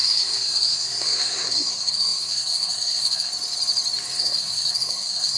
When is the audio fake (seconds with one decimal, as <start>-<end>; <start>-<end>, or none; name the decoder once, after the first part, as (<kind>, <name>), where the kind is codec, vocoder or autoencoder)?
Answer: 0.0-3.3 (codec, SNAC); 4.2-5.4

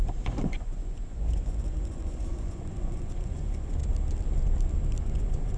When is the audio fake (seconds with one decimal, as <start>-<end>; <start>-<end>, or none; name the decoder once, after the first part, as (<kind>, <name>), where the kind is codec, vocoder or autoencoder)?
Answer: 0.0-3.8 (vocoder, Vocos); 5.0-5.6